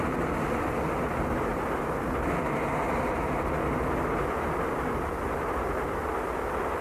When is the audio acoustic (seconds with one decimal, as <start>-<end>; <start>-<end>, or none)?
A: 0.0-6.8